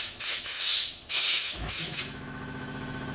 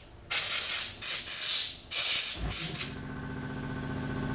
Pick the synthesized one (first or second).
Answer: first